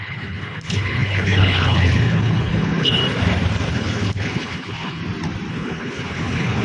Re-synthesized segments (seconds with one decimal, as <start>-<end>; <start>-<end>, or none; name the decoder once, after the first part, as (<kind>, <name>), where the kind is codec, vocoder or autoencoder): 0.0-3.0 (codec, HILCodec); 3.7-5.0; 5.5-6.6